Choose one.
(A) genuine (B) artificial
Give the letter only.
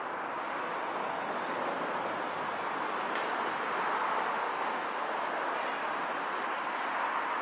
A